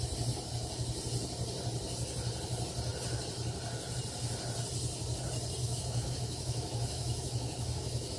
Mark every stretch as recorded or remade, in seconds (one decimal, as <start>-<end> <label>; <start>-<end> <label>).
0.0-5.6 recorded; 5.6-8.2 remade